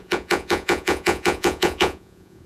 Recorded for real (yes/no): no